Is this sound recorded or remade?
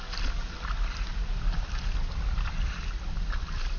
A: recorded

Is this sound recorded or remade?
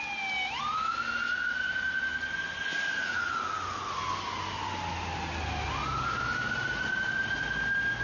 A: recorded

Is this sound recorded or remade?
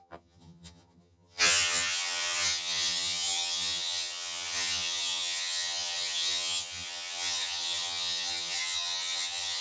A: remade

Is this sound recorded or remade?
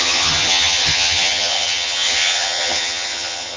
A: remade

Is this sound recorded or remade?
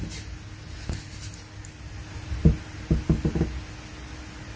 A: recorded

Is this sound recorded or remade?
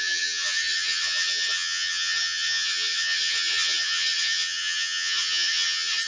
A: remade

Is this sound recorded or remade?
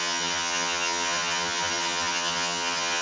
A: remade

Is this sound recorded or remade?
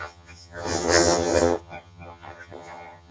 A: remade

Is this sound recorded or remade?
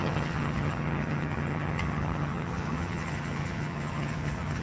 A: remade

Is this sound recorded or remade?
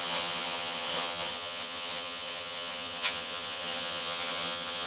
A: remade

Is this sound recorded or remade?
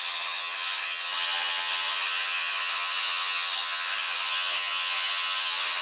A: remade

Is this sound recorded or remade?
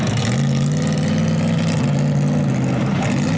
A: recorded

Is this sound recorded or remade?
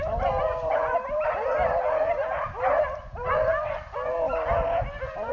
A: recorded